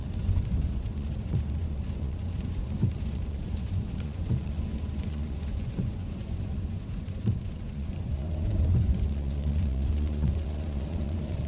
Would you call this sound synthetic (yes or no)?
yes